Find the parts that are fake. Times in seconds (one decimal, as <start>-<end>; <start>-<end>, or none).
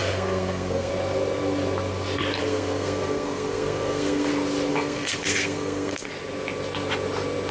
0.0-0.9; 2.4-4.3; 4.7-6.1